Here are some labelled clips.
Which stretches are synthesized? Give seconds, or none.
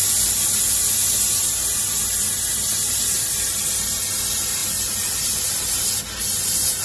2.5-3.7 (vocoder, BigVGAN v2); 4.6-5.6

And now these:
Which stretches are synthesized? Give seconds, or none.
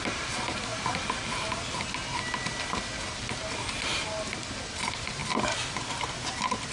0.0-0.7 (vocoder, BigVGAN v2); 4.7-5.2; 5.8-6.7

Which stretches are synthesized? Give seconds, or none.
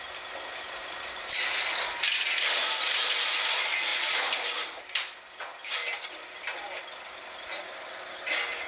none